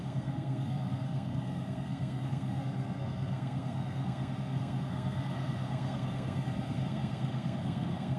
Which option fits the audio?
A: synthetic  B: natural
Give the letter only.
A